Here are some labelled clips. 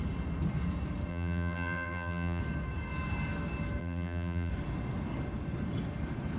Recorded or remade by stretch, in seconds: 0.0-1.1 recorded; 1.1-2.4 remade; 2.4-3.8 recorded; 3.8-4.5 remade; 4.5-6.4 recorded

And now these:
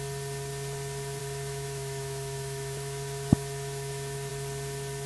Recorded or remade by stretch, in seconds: 0.0-1.2 recorded; 1.2-4.3 remade; 4.3-5.1 recorded